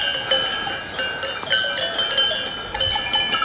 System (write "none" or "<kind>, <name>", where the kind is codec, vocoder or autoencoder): none